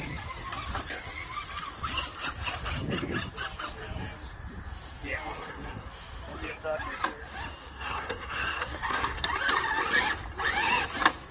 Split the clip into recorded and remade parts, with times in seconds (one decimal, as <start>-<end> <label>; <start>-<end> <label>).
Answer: 0.0-5.3 recorded; 5.3-5.9 remade; 5.9-7.6 recorded; 7.6-9.2 remade; 9.2-11.3 recorded